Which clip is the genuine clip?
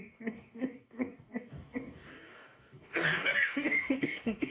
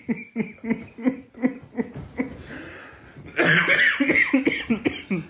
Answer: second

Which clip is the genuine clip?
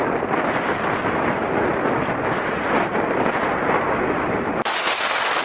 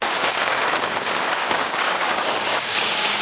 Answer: first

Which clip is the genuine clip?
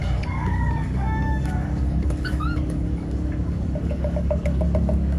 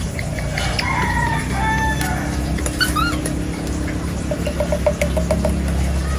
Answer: second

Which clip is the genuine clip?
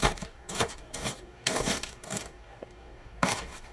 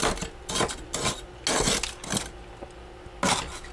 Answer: second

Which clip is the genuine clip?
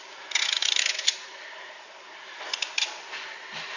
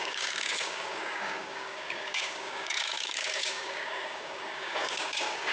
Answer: first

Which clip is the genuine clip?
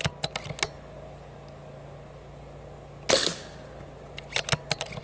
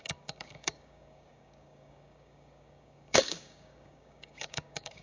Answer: first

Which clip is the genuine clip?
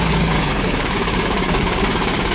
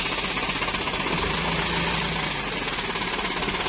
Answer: second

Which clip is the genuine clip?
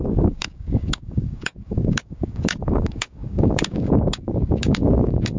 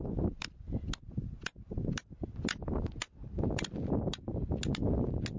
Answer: second